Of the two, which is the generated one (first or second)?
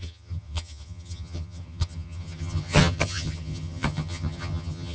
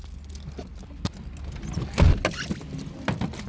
first